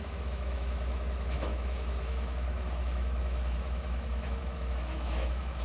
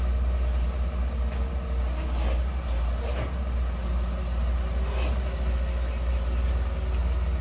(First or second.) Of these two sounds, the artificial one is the first